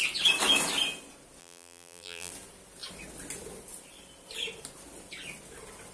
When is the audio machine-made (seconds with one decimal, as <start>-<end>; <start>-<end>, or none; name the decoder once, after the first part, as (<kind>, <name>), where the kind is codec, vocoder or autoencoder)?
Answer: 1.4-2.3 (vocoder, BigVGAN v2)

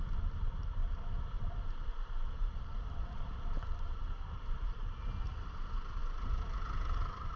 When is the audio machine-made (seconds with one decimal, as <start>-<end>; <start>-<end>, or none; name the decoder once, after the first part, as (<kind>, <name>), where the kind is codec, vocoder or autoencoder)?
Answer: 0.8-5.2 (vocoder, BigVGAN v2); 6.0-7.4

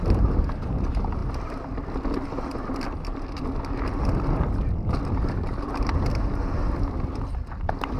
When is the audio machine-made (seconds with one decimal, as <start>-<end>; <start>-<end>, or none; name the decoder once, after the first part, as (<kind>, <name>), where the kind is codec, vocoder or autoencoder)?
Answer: none